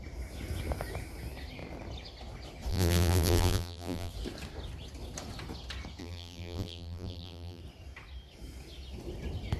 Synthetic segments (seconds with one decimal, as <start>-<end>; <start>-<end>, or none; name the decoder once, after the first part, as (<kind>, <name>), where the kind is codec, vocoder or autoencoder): 2.7-4.1 (vocoder, BigVGAN v2); 6.0-7.6